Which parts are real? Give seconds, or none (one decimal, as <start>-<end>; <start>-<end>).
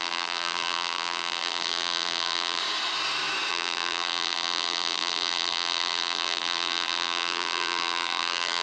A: 2.6-3.5